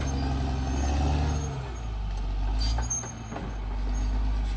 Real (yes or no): yes